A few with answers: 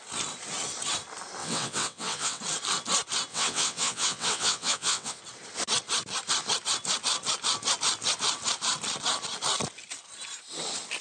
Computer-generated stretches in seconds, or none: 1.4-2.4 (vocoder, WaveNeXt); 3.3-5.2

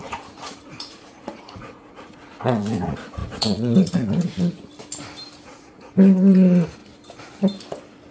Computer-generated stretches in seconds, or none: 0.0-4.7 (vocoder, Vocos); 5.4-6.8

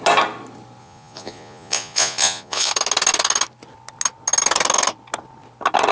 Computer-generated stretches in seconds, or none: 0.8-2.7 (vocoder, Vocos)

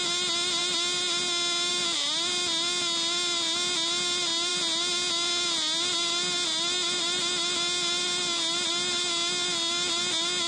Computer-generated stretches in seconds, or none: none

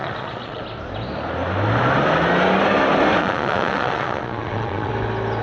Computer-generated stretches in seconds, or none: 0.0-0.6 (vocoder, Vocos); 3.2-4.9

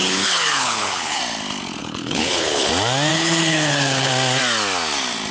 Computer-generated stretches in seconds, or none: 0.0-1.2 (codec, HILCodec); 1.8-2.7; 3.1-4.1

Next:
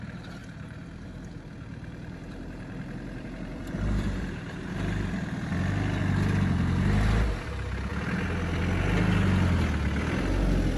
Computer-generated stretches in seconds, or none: 0.4-5.5 (vocoder, BigVGAN v2)

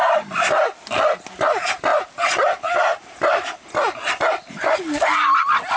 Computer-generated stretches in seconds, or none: none